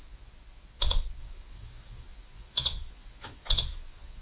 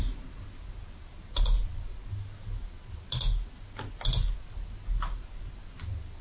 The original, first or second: second